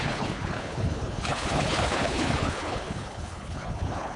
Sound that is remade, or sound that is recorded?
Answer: remade